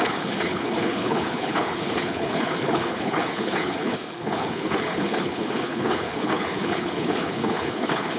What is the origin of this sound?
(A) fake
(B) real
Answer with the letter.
A